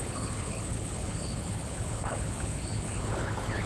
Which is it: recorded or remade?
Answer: remade